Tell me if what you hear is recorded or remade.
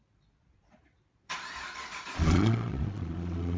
remade